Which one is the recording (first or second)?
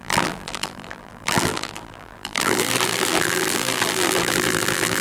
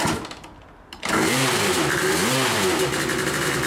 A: second